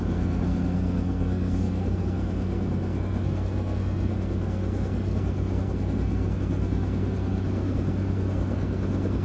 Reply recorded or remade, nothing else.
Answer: remade